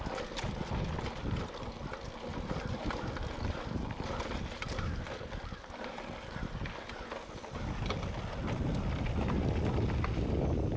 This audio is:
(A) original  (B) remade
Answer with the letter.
A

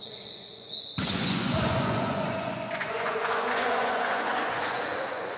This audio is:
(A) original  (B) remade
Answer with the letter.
B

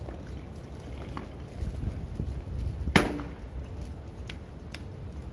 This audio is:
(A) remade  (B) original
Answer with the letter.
B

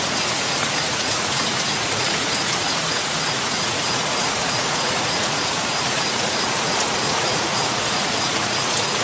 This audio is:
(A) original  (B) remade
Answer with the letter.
B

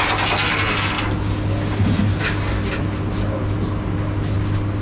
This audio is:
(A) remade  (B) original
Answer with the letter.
B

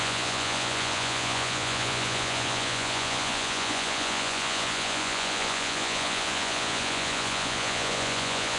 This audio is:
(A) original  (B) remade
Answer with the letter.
B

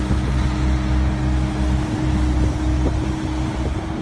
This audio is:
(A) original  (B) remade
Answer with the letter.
A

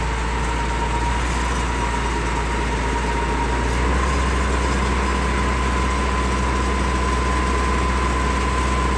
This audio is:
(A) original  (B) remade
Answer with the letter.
A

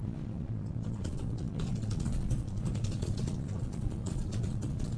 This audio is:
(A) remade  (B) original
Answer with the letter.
A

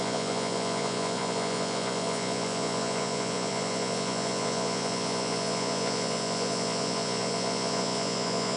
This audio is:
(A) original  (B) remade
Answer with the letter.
B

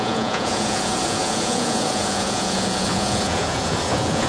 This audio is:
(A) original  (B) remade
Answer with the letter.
B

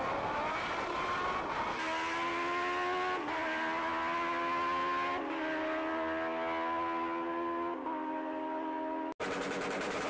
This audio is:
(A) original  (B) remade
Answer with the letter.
A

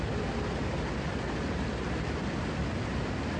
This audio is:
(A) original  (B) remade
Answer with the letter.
A